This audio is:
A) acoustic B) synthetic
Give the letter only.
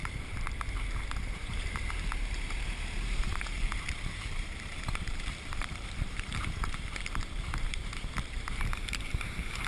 B